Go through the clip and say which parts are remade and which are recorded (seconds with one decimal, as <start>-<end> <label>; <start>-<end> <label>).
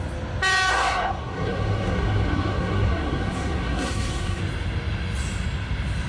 0.0-0.7 recorded; 0.7-4.4 remade; 4.4-6.1 recorded